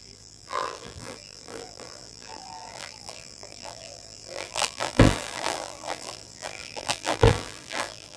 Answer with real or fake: fake